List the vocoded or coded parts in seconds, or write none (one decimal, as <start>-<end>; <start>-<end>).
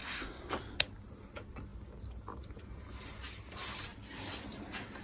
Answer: 0.0-0.5